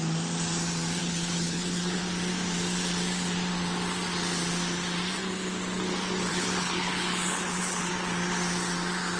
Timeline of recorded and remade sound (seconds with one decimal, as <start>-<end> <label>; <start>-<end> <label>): 0.0-1.0 recorded; 1.0-2.0 remade; 2.0-6.3 recorded; 6.3-7.9 remade; 7.9-9.2 recorded

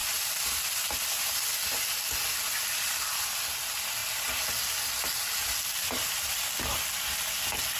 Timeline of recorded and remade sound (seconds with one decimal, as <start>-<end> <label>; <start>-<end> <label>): 0.0-7.8 recorded

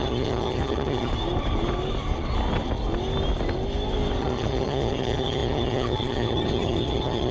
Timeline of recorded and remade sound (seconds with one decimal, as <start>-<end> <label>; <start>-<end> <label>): 0.0-1.1 remade; 1.1-4.2 recorded; 4.2-7.3 remade

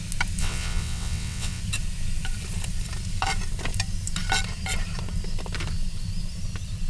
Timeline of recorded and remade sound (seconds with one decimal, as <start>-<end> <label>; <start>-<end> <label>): 0.0-0.4 recorded; 0.4-1.6 remade; 1.6-6.9 recorded

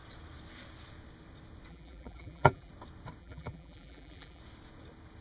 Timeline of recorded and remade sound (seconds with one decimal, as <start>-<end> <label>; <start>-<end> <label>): 0.0-1.7 recorded; 1.7-2.7 remade; 2.7-3.2 recorded; 3.2-4.4 remade; 4.4-5.2 recorded

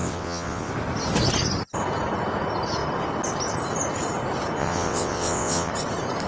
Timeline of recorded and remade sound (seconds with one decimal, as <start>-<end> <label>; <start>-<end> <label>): 0.0-0.7 remade; 0.7-4.6 recorded; 4.6-5.7 remade; 5.7-6.3 recorded